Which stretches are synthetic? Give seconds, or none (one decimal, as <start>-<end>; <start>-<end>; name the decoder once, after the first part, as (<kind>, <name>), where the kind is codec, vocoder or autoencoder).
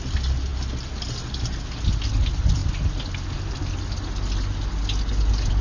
none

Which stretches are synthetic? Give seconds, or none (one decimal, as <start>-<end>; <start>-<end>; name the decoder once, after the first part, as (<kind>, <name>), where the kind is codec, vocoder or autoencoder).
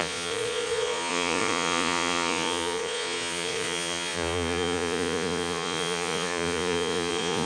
0.0-7.5 (vocoder, Vocos)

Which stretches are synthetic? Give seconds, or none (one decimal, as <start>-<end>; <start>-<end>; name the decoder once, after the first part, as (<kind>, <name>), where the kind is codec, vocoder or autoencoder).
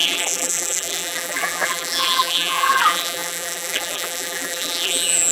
0.0-5.3 (vocoder, BigVGAN v2)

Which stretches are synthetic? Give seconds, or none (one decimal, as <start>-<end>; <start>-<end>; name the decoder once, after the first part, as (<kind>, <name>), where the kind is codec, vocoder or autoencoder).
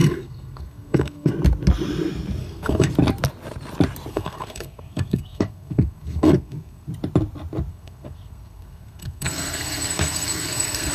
0.0-1.3 (codec, SNAC); 2.4-2.9; 4.1-6.9; 7.7-10.9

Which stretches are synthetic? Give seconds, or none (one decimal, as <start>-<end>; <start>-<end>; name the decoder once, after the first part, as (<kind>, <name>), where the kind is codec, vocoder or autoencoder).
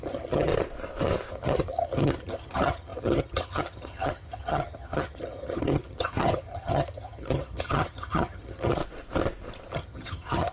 0.0-0.5 (vocoder, HiFi-GAN); 1.3-8.8; 9.7-10.5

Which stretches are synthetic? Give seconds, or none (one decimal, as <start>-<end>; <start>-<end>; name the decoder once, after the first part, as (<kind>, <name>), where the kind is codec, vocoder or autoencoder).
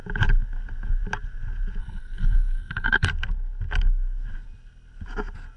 1.8-3.1 (codec, SNAC)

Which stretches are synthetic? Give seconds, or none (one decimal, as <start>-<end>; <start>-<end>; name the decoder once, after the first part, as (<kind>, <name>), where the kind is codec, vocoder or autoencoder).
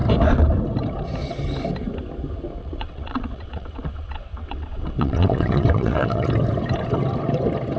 2.6-6.3 (vocoder, WaveNeXt)